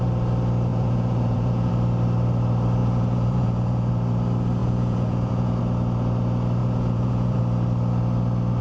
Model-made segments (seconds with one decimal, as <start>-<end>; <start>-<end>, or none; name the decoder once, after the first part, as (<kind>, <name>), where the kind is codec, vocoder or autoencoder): 0.7-1.7 (vocoder, Vocos); 2.8-3.9; 4.6-5.6; 6.6-7.4